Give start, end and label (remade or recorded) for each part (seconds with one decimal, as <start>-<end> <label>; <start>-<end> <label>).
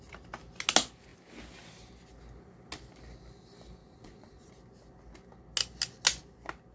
0.0-3.8 recorded; 3.8-4.5 remade; 4.5-6.7 recorded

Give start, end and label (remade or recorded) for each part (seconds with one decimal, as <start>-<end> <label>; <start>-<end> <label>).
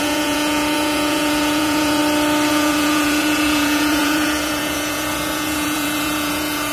0.0-2.0 remade; 2.0-2.5 recorded; 2.5-6.7 remade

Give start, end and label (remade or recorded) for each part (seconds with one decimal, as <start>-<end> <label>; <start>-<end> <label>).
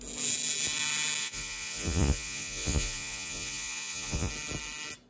0.0-1.2 recorded; 1.2-4.3 remade; 4.3-5.1 recorded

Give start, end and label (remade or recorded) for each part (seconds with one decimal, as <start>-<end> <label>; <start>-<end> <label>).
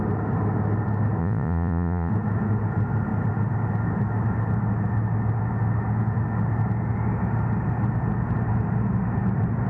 0.0-1.2 recorded; 1.2-2.1 remade; 2.1-9.7 recorded